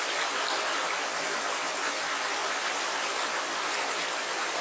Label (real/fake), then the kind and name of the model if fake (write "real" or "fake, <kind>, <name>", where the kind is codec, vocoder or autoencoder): real